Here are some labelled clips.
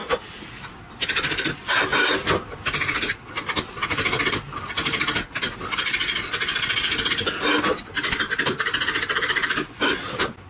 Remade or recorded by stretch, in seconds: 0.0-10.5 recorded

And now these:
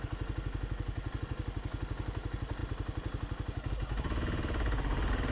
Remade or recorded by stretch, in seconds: 0.0-5.3 recorded

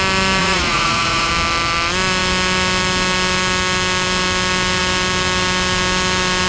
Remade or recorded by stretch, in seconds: 0.0-0.4 recorded; 0.4-1.3 remade; 1.3-6.5 recorded

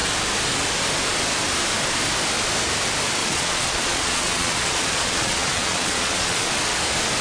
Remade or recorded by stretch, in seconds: 0.0-3.2 recorded; 3.2-6.5 remade; 6.5-7.2 recorded

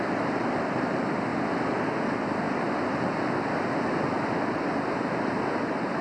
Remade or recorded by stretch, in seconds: 0.0-1.3 remade; 1.3-4.9 recorded; 4.9-6.0 remade

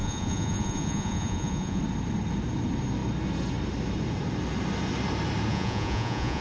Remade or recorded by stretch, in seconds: 0.0-1.8 remade; 1.8-5.5 recorded; 5.5-6.4 remade

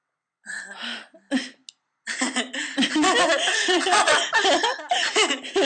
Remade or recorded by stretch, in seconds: 0.0-0.6 remade; 0.6-3.4 recorded; 3.4-4.2 remade; 4.2-5.6 recorded